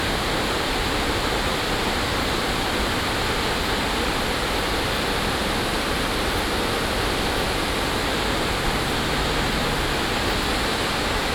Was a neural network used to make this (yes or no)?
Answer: no